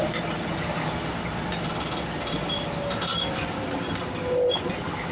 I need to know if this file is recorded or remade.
recorded